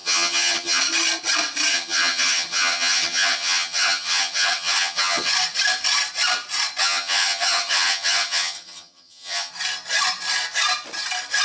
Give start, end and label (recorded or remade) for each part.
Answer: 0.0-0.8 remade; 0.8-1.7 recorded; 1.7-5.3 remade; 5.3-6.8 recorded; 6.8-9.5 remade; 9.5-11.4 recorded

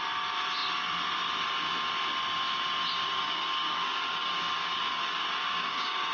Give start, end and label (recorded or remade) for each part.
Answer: 0.0-3.2 recorded; 3.2-6.1 remade

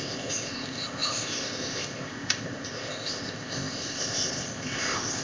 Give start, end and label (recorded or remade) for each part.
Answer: 0.0-5.2 remade

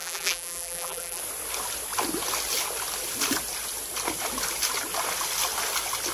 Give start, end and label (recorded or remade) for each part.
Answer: 0.0-1.2 remade; 1.2-6.1 recorded

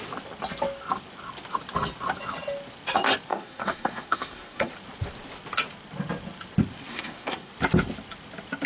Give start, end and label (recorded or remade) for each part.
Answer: 0.0-3.3 recorded; 3.3-4.7 remade; 4.7-6.9 recorded; 6.9-7.5 remade; 7.5-8.7 recorded

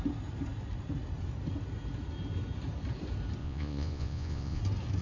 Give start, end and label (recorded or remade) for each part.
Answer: 0.0-3.4 recorded; 3.4-4.6 remade; 4.6-5.0 recorded

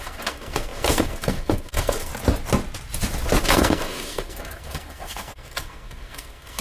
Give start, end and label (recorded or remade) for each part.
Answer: 0.0-2.1 remade; 2.1-3.4 recorded; 3.4-6.6 remade

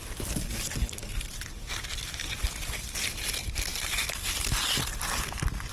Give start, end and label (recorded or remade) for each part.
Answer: 0.0-5.7 recorded